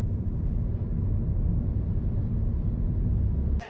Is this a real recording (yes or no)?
yes